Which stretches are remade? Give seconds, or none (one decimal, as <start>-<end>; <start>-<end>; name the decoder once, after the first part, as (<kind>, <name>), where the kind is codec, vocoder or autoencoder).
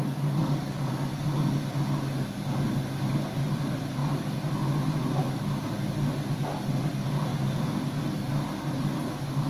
0.4-0.9 (codec, DAC)